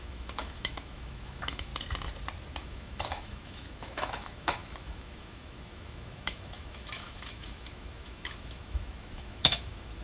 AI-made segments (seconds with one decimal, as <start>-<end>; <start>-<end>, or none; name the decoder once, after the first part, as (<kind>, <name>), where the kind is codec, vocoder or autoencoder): 0.0-1.7 (autoencoder, DAC-VAE); 2.5-10.0